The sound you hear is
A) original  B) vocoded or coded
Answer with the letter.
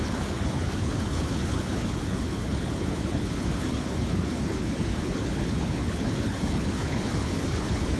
B